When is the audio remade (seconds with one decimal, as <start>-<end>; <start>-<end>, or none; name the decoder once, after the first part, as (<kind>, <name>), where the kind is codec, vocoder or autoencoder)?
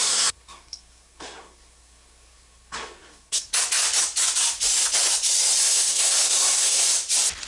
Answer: 0.0-3.5 (codec, SNAC); 5.6-6.8